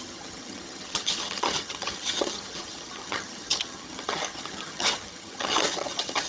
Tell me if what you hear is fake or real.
fake